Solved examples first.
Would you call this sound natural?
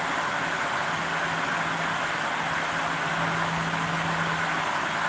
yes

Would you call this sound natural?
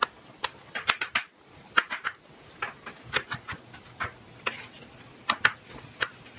yes